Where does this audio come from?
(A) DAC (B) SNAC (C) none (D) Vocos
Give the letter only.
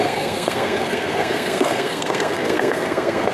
B